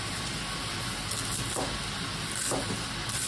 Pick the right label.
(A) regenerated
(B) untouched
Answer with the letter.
B